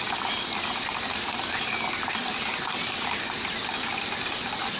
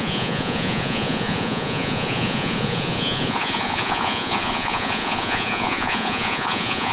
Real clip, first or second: first